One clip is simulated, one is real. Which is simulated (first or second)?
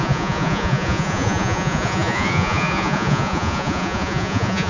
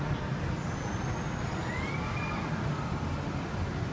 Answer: first